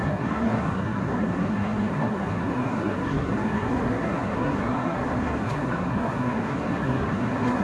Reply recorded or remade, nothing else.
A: remade